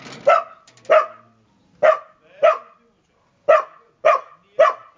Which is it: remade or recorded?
recorded